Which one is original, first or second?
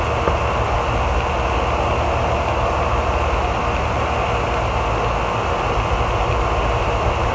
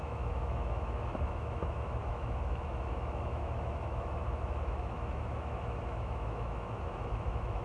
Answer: first